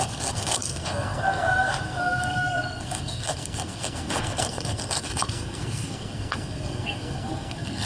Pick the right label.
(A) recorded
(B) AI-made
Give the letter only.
B